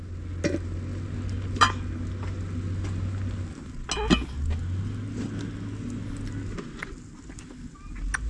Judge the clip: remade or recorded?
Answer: recorded